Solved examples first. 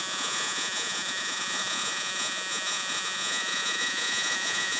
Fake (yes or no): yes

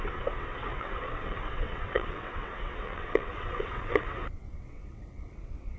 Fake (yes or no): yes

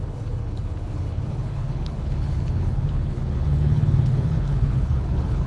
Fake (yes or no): yes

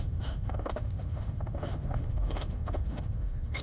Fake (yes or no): yes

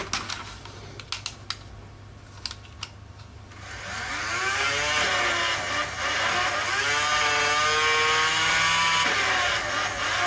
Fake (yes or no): no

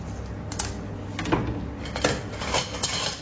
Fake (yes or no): no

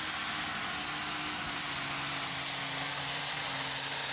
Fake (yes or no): no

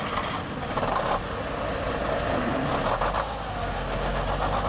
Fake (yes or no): no